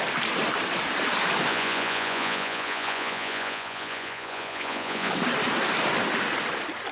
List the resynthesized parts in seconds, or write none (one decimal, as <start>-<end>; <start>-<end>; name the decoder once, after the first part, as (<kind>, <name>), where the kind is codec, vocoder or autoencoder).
1.5-5.1 (vocoder, Vocos)